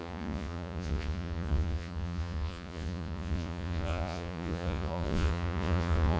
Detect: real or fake fake